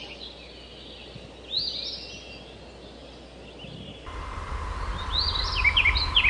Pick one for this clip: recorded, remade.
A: recorded